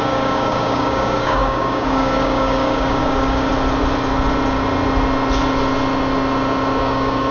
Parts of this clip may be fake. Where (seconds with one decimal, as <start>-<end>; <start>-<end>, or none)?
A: 0.0-3.5; 6.8-7.3